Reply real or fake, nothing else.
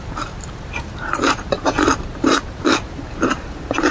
fake